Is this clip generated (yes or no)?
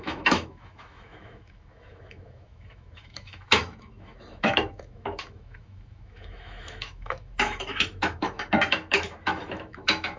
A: yes